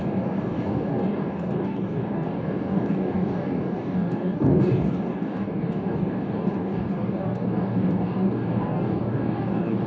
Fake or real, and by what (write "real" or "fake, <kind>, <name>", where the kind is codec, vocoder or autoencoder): fake, codec, DAC